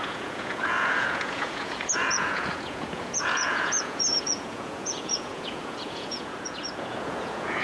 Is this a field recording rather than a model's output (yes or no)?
no